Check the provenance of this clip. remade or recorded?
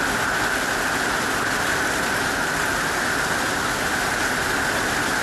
recorded